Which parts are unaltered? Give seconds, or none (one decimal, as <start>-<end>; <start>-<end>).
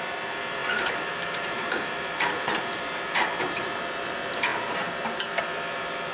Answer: none